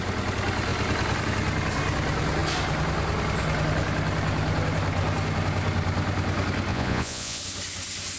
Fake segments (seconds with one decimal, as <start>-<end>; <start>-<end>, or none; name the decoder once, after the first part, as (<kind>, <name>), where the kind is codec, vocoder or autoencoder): 6.7-7.4 (vocoder, Vocos)